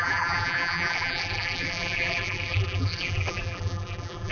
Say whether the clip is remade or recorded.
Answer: remade